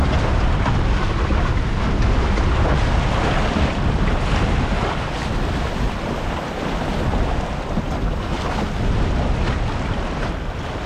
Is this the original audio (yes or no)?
yes